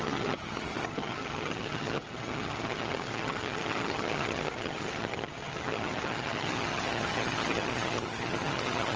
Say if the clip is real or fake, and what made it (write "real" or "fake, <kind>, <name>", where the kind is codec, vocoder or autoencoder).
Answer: fake, vocoder, HiFi-GAN